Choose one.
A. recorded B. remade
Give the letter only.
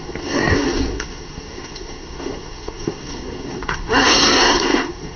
B